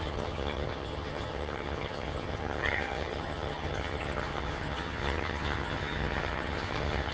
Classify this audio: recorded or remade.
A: remade